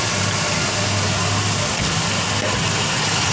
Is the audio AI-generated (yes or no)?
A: no